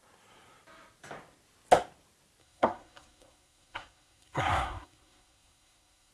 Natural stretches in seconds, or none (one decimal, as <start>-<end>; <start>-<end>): 0.0-2.4